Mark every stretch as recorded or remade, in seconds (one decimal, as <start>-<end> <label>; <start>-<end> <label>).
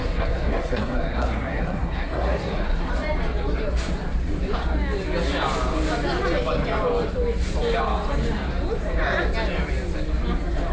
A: 0.0-2.9 remade; 2.9-10.7 recorded